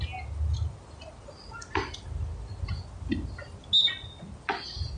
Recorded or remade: recorded